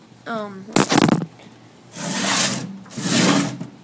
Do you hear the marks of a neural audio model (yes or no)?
no